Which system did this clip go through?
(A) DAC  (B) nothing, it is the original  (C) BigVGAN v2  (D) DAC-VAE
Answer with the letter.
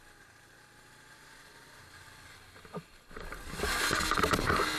B